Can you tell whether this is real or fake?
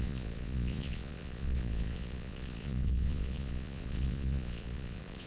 fake